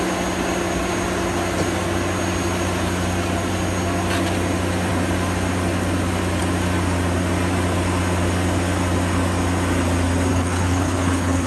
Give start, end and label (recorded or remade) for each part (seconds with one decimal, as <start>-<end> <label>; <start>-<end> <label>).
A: 0.0-10.3 recorded; 10.3-11.5 remade

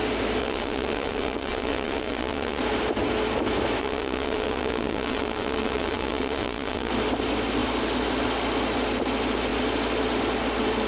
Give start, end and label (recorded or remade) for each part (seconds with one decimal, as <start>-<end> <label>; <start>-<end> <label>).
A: 0.0-0.4 recorded; 0.4-2.6 remade; 2.6-3.8 recorded; 3.8-6.9 remade; 6.9-10.9 recorded

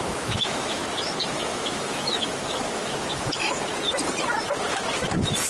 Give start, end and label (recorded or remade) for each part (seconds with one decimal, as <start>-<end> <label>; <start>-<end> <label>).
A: 0.0-0.8 remade; 0.8-1.3 recorded; 1.3-3.7 remade; 3.7-5.0 recorded; 5.0-5.5 remade

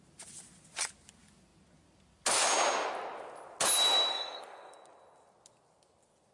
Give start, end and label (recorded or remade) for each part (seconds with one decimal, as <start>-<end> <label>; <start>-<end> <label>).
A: 0.0-4.1 recorded; 4.1-4.7 remade; 4.7-6.3 recorded